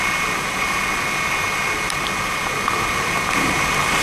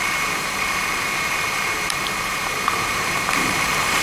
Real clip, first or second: first